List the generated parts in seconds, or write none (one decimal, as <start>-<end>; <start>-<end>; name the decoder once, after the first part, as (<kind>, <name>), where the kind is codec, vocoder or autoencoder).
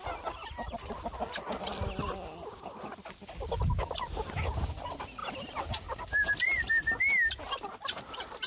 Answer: none